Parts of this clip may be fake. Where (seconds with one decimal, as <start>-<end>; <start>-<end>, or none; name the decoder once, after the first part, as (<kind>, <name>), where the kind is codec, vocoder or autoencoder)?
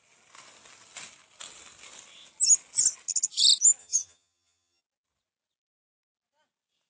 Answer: 3.8-4.8 (vocoder, HiFi-GAN)